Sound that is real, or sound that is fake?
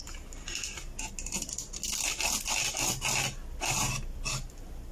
real